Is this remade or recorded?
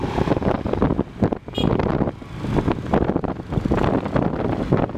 recorded